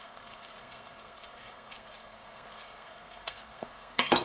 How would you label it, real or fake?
fake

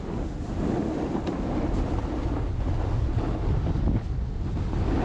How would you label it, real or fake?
real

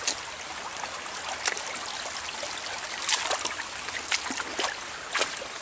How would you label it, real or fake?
real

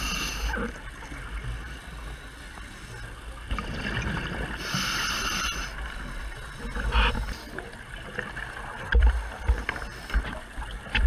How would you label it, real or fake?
real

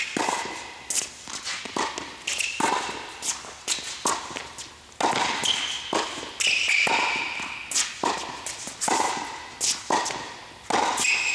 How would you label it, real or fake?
real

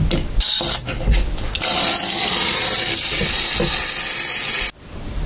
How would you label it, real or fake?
real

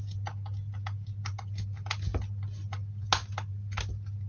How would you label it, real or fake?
real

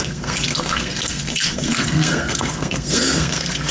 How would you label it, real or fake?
fake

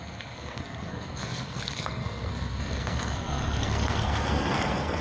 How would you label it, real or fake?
fake